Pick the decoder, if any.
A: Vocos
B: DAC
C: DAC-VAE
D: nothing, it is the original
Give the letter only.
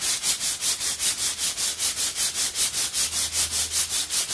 D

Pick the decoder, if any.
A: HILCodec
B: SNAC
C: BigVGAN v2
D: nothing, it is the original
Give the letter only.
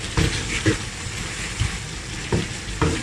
D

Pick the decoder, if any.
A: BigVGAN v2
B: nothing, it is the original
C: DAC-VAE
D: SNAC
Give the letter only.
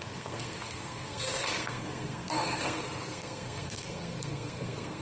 D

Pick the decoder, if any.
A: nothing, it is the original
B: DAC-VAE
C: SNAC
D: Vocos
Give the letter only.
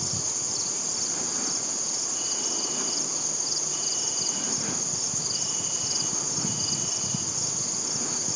A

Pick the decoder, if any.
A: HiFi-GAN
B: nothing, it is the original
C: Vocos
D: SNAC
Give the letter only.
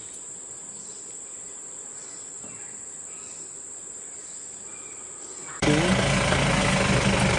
B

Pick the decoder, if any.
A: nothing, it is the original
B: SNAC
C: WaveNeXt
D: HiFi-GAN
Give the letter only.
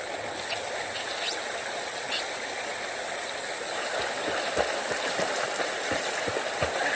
A